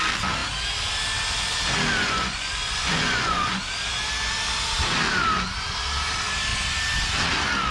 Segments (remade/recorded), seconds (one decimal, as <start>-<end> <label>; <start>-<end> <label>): 0.0-2.0 recorded; 2.0-3.6 remade; 3.6-7.7 recorded